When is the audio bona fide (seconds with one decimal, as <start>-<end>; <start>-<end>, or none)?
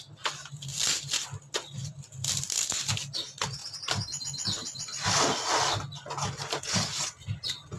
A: 0.0-0.7; 1.4-1.8; 2.7-7.8